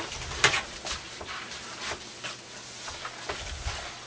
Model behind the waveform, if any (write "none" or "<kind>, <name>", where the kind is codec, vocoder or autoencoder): none